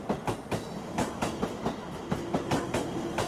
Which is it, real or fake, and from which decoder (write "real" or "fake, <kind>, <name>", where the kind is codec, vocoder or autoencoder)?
real